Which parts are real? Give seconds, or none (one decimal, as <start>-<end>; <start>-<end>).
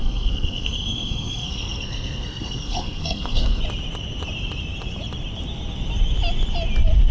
3.6-7.1